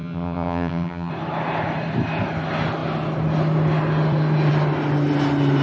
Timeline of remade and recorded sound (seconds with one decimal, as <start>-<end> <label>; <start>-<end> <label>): 0.0-1.1 remade; 1.1-5.6 recorded